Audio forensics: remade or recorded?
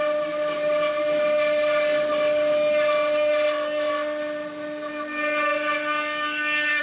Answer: recorded